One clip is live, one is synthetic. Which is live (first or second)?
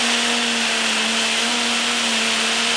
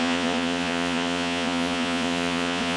first